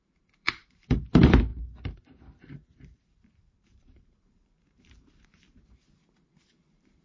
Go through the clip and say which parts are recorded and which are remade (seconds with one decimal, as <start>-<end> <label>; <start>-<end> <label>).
0.0-7.0 remade